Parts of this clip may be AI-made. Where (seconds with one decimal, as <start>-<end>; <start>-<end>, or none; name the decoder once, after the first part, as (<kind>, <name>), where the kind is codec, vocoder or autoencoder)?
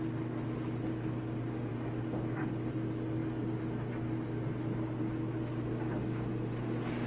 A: none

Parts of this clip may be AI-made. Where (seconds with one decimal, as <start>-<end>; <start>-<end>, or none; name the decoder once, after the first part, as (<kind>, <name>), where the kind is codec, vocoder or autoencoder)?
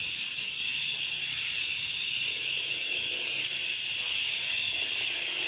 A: 0.0-3.6 (codec, DAC); 4.1-5.5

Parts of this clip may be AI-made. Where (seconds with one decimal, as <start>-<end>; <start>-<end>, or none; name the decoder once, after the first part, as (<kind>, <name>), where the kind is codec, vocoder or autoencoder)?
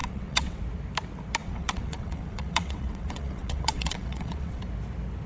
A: 0.0-0.6 (vocoder, WaveNeXt); 1.4-4.6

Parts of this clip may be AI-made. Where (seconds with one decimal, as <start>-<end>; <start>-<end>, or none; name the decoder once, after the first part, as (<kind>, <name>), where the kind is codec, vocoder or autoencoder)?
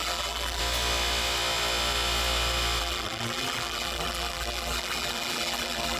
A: 0.0-0.6 (vocoder, BigVGAN v2); 2.8-6.0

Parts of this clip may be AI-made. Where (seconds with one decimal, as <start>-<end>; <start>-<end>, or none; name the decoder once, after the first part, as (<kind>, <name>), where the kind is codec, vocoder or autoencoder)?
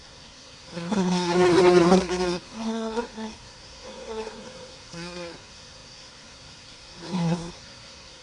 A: 0.0-8.2 (codec, SNAC)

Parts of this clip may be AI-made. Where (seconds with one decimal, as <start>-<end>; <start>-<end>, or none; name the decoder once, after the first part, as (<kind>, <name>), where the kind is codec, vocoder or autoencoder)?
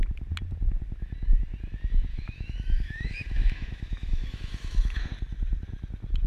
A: 2.1-5.1 (autoencoder, DAC-VAE)